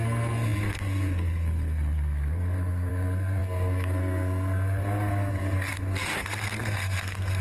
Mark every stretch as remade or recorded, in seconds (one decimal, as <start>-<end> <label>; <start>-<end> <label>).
0.0-7.4 remade